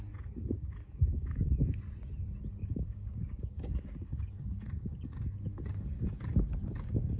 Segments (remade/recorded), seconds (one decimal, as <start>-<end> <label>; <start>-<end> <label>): 0.0-0.6 recorded; 0.6-1.5 remade; 1.5-2.6 recorded; 2.6-7.2 remade